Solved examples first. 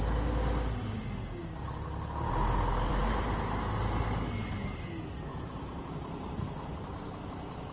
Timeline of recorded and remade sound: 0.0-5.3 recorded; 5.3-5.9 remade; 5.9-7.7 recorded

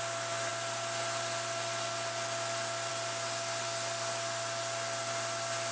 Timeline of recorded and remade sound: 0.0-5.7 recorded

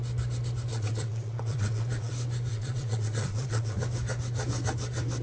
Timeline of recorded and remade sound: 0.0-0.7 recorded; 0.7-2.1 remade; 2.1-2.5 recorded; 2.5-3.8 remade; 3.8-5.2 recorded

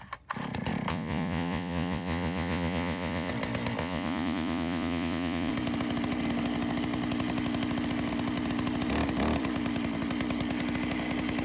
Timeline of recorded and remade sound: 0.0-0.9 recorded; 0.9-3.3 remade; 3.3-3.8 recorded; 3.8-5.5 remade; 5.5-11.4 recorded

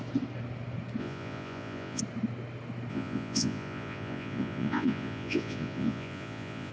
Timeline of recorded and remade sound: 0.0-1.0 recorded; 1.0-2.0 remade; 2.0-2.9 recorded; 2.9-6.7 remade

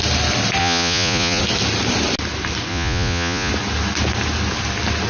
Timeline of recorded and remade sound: 0.0-0.6 recorded; 0.6-1.4 remade; 1.4-2.7 recorded; 2.7-3.5 remade; 3.5-5.1 recorded